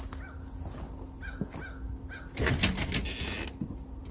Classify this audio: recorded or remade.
recorded